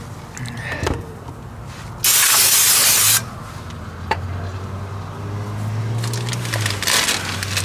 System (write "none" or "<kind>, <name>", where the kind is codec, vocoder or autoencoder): none